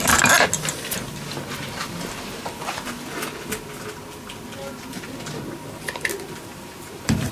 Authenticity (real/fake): real